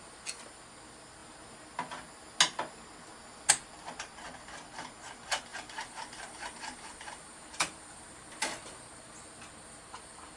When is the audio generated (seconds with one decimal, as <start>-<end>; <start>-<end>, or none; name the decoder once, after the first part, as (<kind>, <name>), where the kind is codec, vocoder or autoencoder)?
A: 5.5-8.2 (vocoder, BigVGAN v2)